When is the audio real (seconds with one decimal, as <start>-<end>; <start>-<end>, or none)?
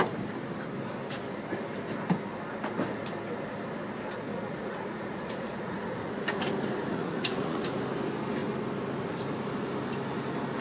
0.0-4.3; 6.1-6.9; 7.7-10.6